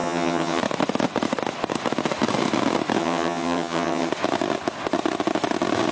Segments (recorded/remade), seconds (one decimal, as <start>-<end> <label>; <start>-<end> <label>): 0.0-0.6 remade; 0.6-3.0 recorded; 3.0-4.1 remade; 4.1-5.9 recorded